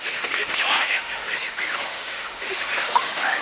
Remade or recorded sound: remade